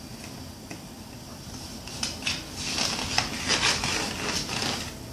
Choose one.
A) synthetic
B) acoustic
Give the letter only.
B